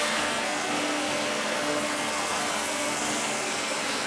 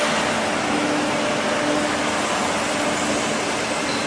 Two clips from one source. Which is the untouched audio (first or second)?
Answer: second